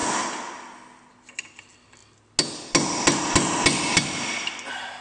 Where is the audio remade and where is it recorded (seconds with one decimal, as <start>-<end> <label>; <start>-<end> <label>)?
0.0-5.0 recorded